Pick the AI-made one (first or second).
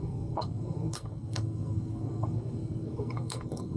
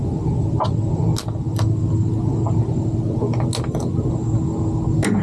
first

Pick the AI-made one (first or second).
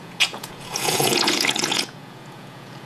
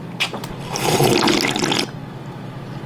first